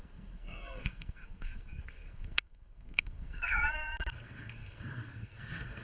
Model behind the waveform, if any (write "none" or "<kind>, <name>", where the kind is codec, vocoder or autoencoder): codec, SNAC